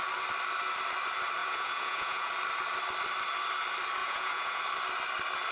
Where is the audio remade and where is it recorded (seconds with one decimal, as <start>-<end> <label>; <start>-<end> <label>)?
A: 0.0-1.4 recorded; 1.4-2.3 remade; 2.3-4.0 recorded; 4.0-4.6 remade; 4.6-5.5 recorded